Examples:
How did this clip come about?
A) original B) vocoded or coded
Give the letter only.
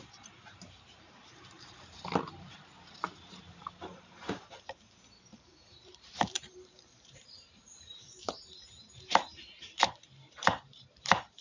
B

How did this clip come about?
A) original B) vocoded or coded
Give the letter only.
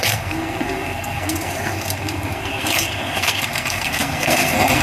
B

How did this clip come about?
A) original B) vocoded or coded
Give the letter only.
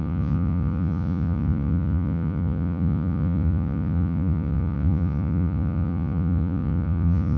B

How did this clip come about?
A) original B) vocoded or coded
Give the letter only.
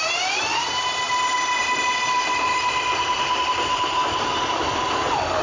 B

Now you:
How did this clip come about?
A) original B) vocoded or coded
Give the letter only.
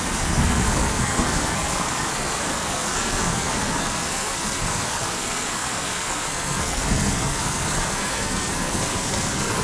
B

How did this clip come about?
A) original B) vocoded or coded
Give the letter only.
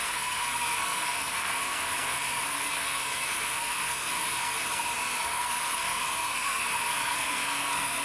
B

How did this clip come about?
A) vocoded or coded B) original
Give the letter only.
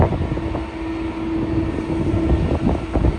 B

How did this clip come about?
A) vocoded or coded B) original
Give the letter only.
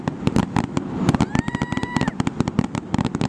A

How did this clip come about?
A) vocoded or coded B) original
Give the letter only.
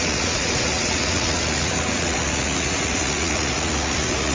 A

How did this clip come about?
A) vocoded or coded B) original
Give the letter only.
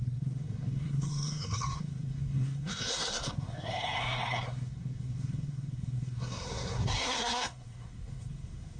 A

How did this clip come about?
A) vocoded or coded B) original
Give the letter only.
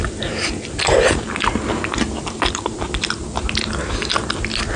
B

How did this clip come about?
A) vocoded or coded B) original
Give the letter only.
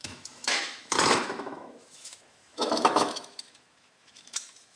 A